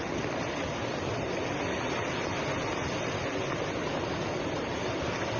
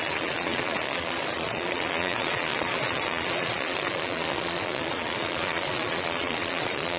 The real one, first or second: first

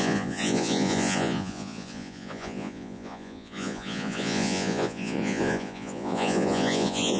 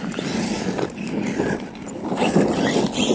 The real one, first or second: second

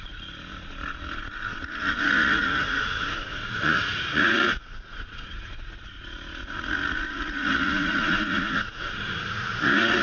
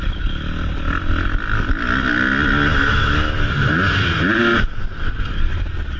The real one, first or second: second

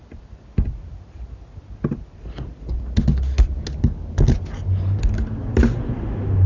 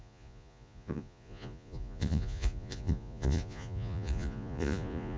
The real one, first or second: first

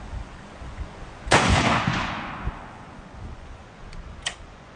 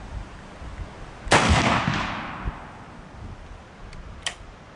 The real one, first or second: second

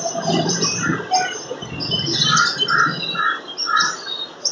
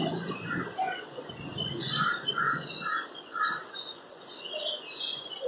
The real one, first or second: first